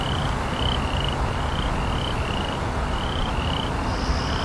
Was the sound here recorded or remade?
recorded